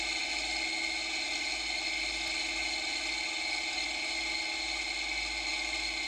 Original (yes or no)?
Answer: yes